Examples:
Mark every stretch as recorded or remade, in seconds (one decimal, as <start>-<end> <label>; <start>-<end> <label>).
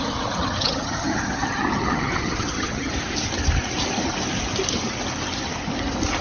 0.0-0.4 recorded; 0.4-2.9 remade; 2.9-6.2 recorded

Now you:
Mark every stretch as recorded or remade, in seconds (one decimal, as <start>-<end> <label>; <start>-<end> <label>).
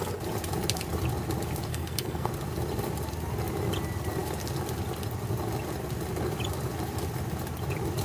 0.0-1.7 recorded; 1.7-2.3 remade; 2.3-8.0 recorded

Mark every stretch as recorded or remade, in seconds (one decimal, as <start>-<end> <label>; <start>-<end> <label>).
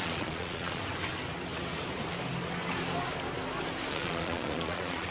0.0-0.8 remade; 0.8-3.9 recorded; 3.9-5.1 remade